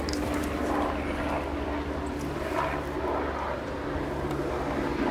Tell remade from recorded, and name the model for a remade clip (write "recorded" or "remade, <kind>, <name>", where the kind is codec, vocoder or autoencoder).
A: recorded